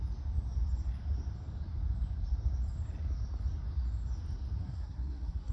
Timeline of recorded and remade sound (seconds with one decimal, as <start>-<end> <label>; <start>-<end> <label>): 0.0-4.6 recorded; 4.6-5.5 remade